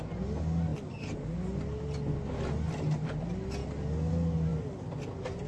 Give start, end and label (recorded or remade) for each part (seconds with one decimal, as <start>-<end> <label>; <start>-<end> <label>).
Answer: 0.0-5.5 recorded